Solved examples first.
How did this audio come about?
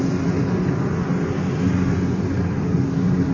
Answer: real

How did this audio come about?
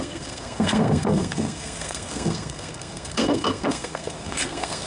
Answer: fake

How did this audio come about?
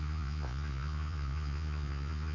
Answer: fake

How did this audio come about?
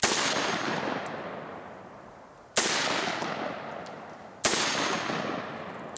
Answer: real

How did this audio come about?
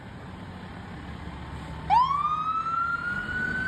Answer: real